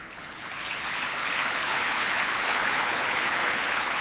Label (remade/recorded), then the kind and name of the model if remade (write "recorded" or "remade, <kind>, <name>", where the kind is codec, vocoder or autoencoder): remade, codec, HILCodec